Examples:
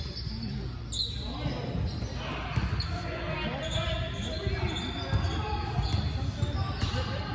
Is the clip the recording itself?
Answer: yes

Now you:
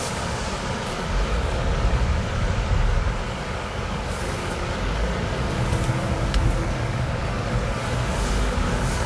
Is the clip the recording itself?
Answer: no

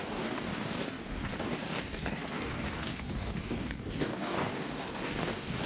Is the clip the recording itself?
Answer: no